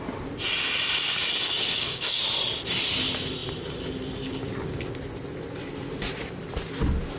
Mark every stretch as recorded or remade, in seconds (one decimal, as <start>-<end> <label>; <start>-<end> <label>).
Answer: 0.0-1.0 recorded; 1.0-2.2 remade; 2.2-7.2 recorded